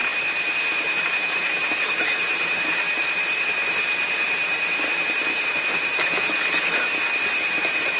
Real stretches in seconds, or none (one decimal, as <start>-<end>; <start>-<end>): 0.0-8.0